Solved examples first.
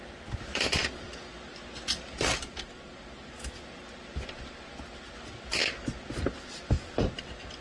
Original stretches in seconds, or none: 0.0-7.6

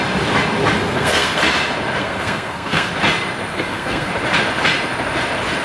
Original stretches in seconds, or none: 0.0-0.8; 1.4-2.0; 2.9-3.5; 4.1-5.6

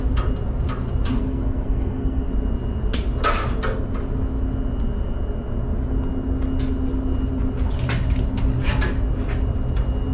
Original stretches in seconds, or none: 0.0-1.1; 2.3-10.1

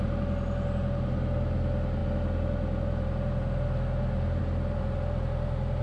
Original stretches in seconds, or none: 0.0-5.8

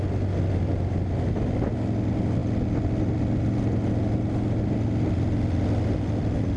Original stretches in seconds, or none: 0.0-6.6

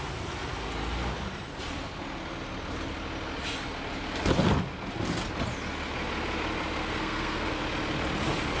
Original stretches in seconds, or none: 0.0-6.8; 7.6-8.6

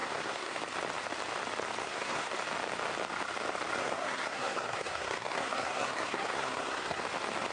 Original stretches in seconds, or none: 0.6-1.8; 2.3-3.8; 7.0-7.5

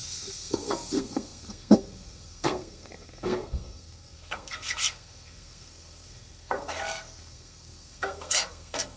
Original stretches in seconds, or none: none